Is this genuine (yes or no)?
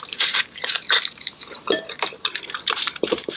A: no